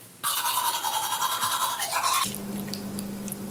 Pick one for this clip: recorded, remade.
recorded